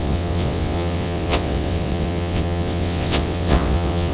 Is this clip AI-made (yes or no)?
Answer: yes